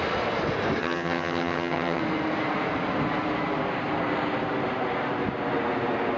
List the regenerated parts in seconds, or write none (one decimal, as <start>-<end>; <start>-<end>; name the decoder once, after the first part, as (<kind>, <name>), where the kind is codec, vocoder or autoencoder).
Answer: 0.8-2.0 (vocoder, HiFi-GAN)